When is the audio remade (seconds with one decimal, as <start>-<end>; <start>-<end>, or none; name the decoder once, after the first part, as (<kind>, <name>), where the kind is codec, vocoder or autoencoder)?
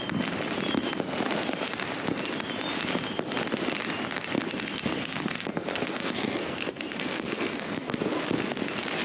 4.9-8.0 (codec, SNAC)